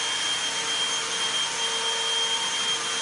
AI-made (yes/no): no